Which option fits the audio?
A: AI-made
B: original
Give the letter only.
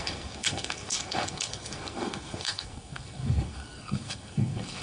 A